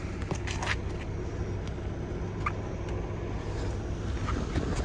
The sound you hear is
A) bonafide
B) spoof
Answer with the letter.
A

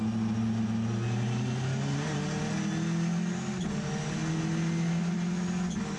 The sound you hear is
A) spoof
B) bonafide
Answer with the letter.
B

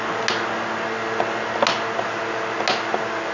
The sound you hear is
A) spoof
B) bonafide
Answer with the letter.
B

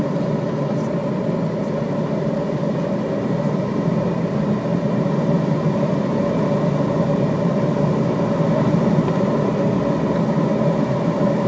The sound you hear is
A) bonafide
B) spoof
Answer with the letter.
A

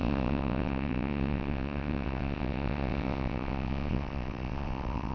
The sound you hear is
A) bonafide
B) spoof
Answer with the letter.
B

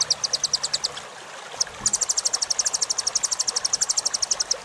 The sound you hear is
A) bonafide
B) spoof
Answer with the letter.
A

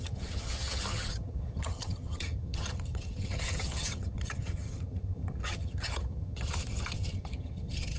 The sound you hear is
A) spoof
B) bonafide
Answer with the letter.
A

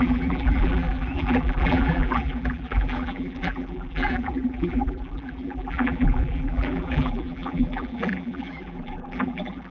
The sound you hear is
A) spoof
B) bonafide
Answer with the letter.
A